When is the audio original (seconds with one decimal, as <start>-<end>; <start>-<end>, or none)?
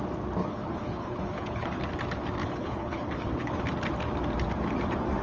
0.0-0.4; 1.8-2.4; 3.6-5.2